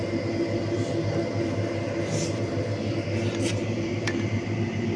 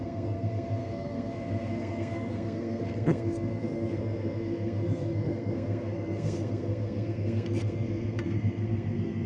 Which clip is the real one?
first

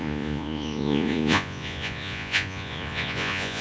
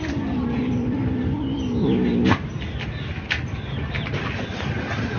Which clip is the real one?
second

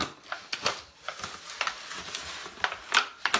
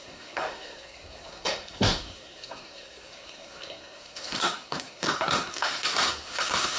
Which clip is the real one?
first